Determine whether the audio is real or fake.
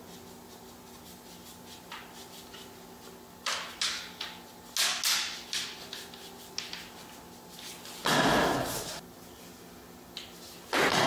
real